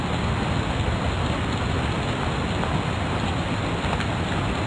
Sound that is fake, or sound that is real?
real